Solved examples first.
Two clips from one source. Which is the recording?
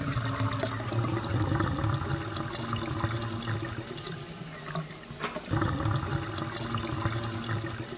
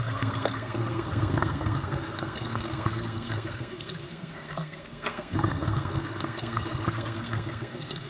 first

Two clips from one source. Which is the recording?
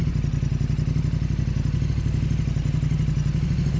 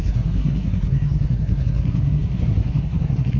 first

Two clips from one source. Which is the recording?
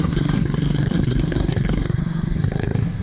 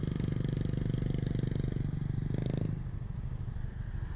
second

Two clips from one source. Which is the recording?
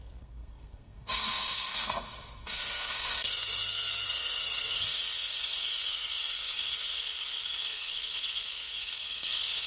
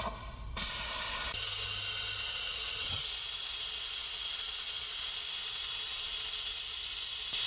second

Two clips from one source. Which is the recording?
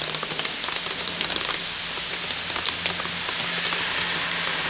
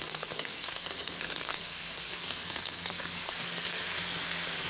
first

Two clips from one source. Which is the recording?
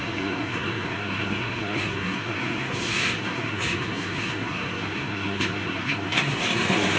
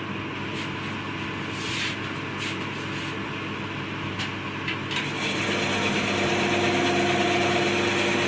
second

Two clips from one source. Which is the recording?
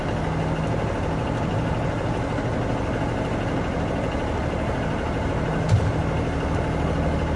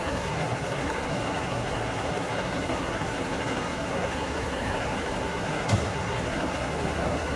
first